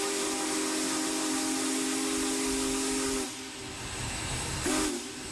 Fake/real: real